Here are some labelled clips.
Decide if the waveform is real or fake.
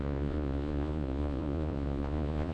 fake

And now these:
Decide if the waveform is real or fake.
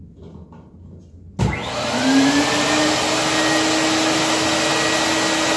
real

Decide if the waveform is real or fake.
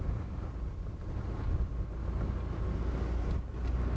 real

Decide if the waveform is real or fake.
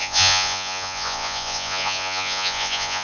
fake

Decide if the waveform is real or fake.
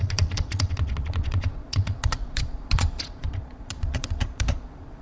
fake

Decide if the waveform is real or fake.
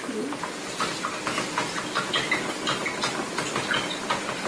real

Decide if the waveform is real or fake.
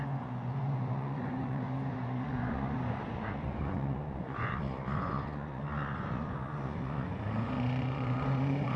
fake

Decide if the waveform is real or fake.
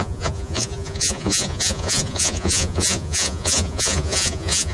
fake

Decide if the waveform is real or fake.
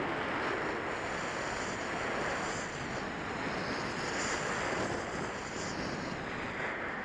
real